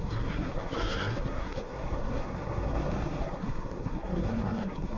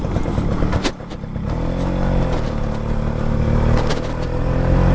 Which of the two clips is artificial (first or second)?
first